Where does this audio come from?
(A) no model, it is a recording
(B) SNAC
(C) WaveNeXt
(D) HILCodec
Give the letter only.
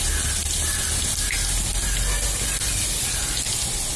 A